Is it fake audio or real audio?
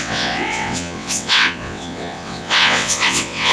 fake